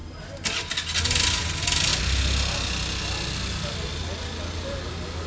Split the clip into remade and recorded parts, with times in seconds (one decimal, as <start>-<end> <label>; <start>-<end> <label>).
0.0-5.3 recorded